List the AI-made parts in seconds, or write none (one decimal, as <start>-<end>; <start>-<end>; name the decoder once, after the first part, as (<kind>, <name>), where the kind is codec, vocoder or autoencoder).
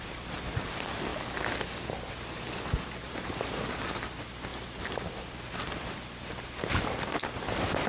0.0-1.1 (vocoder, BigVGAN v2); 2.7-7.9